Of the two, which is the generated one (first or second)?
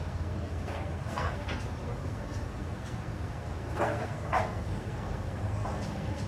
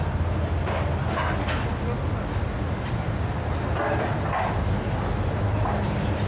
first